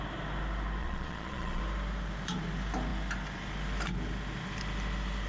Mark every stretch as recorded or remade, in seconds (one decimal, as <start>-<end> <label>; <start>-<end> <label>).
0.0-0.8 recorded; 0.8-1.6 remade; 1.6-5.3 recorded